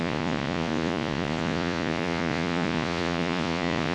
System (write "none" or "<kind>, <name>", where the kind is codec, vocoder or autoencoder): vocoder, Vocos